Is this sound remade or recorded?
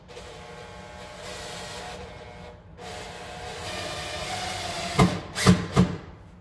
recorded